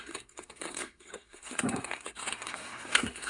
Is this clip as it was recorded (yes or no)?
no